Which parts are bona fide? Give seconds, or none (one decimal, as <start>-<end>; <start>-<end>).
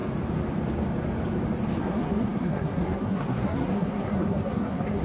0.0-1.8